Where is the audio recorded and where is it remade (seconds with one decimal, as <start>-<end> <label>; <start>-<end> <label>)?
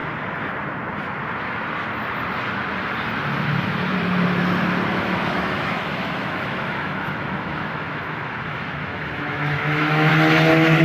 0.0-4.9 recorded; 4.9-10.1 remade; 10.1-10.8 recorded